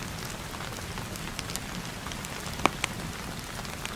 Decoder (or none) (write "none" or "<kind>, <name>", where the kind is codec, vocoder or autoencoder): none